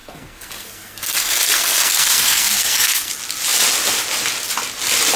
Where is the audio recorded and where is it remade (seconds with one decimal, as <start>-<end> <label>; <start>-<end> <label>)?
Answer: 0.0-3.1 remade; 3.1-5.2 recorded